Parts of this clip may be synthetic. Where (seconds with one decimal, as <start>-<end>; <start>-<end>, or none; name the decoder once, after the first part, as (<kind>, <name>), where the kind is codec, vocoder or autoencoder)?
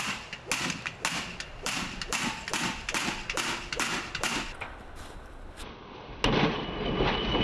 1.5-5.7 (vocoder, BigVGAN v2)